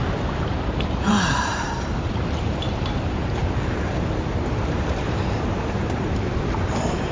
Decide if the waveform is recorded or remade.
remade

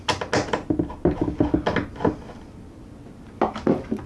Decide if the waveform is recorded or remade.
recorded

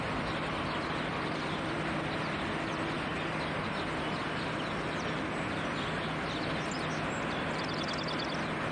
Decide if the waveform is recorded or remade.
recorded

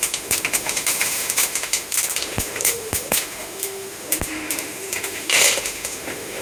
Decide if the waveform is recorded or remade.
remade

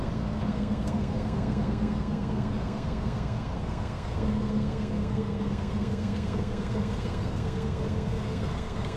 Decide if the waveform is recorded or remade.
remade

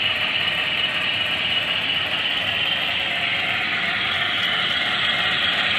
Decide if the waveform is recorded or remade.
recorded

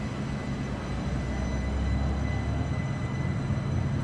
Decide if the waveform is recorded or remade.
recorded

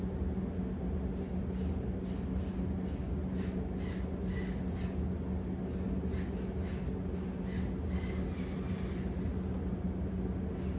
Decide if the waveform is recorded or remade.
recorded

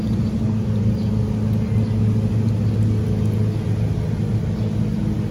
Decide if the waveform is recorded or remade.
recorded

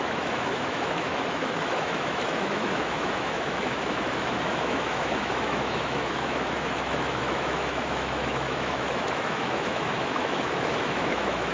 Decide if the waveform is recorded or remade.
remade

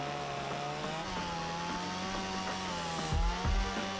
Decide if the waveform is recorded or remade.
recorded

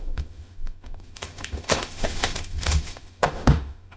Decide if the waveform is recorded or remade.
remade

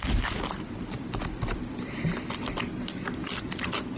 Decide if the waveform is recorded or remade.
remade